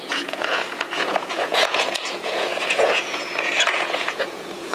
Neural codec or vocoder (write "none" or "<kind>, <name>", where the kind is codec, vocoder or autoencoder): vocoder, Vocos